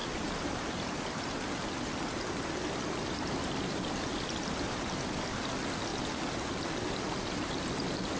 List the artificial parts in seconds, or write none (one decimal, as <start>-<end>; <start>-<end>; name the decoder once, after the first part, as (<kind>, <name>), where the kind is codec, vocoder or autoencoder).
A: none